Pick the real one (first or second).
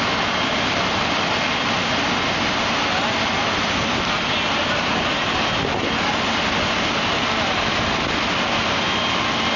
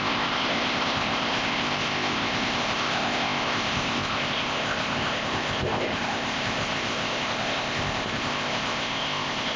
first